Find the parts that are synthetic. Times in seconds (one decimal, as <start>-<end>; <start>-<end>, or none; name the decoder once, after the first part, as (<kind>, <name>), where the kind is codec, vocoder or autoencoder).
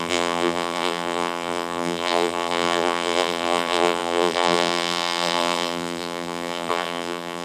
0.0-7.4 (vocoder, BigVGAN v2)